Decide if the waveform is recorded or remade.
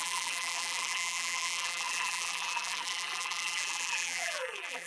remade